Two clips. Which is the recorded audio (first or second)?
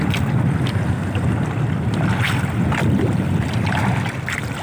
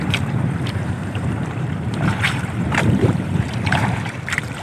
first